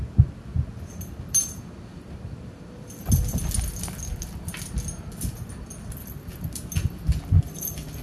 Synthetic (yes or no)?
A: no